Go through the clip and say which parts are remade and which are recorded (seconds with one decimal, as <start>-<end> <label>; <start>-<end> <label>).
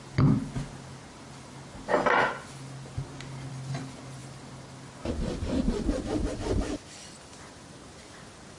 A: 0.0-8.6 recorded